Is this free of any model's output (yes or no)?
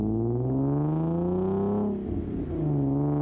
yes